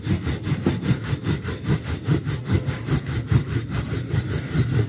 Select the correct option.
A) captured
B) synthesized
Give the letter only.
A